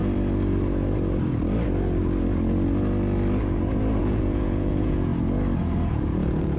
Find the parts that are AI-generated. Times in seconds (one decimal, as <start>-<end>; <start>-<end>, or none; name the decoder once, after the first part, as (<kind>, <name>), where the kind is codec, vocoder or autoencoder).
4.0-5.1 (vocoder, Vocos); 5.9-6.6